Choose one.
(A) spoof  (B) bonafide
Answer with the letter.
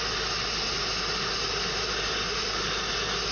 B